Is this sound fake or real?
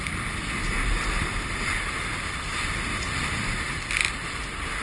real